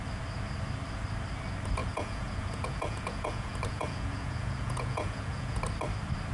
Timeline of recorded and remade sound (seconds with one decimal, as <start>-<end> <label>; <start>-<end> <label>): 0.0-1.8 recorded; 1.8-5.6 remade; 5.6-6.3 recorded